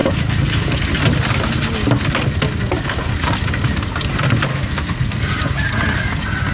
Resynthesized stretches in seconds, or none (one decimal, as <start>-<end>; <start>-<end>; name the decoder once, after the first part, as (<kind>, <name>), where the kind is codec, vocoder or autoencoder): 4.5-5.2 (codec, SNAC)